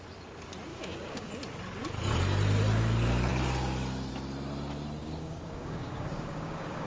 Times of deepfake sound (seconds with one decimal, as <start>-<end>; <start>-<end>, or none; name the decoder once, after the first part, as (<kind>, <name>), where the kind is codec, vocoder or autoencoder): 0.7-1.3 (codec, DAC); 5.0-6.9